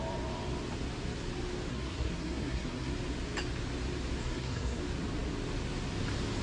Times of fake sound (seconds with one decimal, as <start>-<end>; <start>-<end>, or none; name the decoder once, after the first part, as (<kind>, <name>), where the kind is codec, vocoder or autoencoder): 1.7-2.9 (codec, SNAC); 4.2-4.8